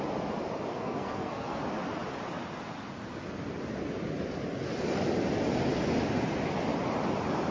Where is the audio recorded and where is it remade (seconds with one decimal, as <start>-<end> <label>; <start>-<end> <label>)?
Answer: 0.0-0.7 recorded; 0.7-1.6 remade; 1.6-7.5 recorded